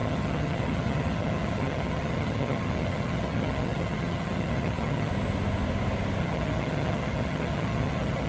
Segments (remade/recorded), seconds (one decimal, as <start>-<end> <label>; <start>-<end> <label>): 0.0-5.1 remade; 5.1-6.2 recorded; 6.2-8.3 remade